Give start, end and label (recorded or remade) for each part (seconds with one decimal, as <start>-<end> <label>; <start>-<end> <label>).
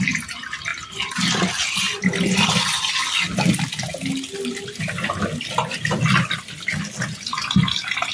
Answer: 0.0-8.1 recorded